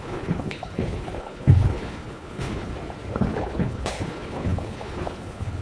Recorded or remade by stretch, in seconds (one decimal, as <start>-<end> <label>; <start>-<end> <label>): 0.0-2.7 remade; 2.7-3.2 recorded; 3.2-5.6 remade